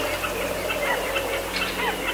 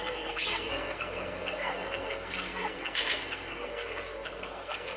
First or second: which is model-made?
second